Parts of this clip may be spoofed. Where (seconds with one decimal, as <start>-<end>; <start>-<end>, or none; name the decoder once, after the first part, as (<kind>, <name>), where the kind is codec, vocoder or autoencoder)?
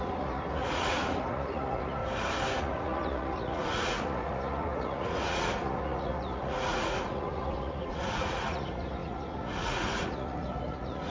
0.0-2.0 (vocoder, Vocos); 2.6-11.1